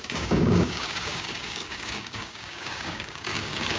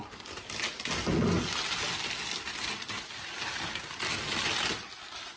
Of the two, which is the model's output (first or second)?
first